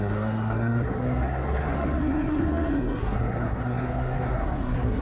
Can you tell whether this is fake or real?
fake